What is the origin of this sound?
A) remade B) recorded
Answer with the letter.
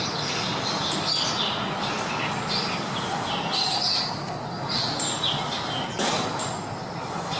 B